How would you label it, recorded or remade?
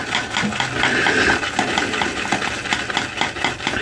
recorded